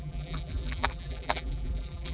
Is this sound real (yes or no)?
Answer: no